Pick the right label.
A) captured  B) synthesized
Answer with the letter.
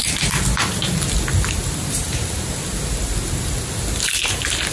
A